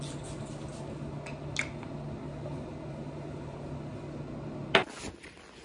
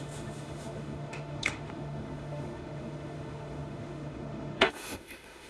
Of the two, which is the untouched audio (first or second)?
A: first